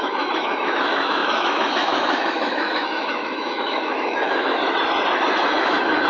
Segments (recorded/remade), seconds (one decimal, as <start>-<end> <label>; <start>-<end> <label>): 0.0-4.6 remade; 4.6-5.6 recorded; 5.6-6.1 remade